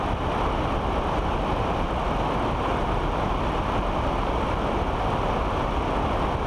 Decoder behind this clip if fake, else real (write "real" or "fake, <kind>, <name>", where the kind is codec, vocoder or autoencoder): real